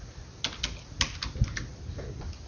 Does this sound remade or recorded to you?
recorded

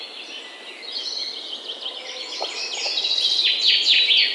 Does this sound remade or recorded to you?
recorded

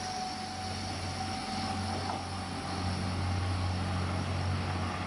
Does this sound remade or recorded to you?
recorded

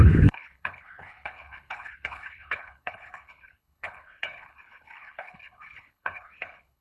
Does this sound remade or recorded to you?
remade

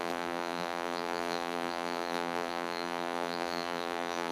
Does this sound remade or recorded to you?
remade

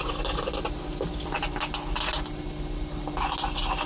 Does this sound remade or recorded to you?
recorded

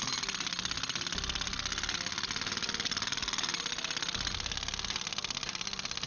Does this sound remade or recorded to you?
recorded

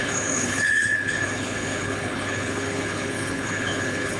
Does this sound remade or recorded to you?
remade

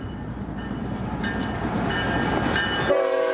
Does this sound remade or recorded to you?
recorded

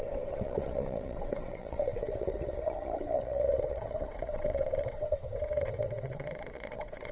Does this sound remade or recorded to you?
remade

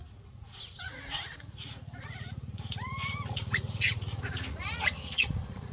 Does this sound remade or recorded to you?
remade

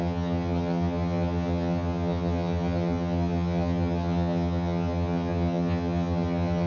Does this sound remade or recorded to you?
remade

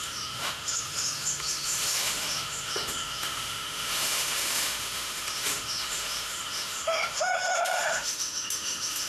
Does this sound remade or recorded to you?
remade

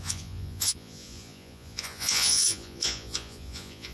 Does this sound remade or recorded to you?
remade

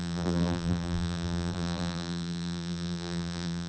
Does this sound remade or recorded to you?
remade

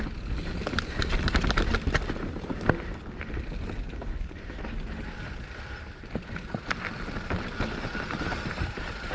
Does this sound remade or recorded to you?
recorded